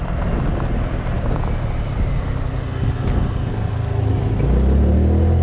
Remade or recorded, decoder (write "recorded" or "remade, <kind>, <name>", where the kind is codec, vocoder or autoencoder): recorded